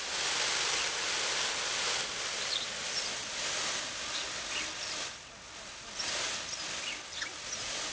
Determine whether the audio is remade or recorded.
remade